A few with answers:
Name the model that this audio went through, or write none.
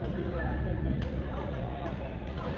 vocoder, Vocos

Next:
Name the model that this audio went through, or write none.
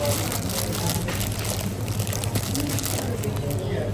none